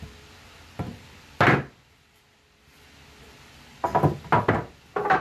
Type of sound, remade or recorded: recorded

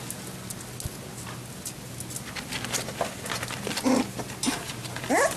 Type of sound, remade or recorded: recorded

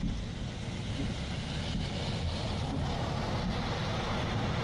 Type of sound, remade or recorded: recorded